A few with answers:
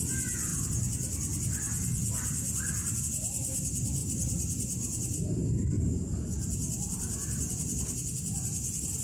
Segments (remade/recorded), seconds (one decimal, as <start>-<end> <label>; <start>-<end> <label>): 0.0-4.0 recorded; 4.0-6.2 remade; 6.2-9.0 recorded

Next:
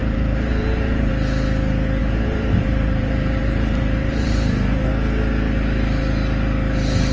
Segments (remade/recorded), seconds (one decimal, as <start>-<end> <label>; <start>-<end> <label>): 0.0-1.1 remade; 1.1-2.0 recorded; 2.0-4.9 remade; 4.9-7.1 recorded

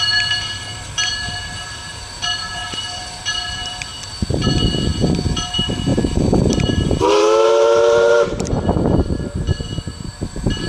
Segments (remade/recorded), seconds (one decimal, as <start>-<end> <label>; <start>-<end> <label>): 0.0-10.7 remade